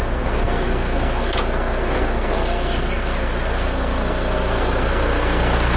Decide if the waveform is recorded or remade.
remade